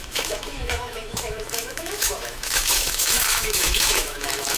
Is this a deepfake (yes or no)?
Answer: yes